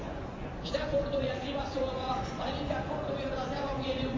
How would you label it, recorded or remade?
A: remade